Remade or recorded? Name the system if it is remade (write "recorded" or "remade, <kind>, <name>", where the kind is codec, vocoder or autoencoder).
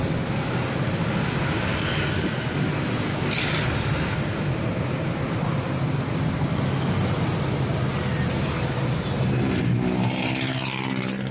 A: recorded